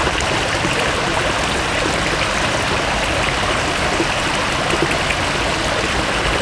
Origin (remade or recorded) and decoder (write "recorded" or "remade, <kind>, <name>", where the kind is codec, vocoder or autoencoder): recorded